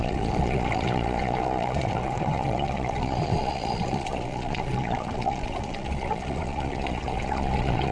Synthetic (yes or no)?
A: yes